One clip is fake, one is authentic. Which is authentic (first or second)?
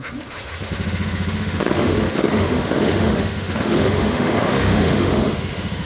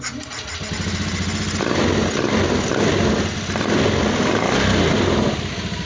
second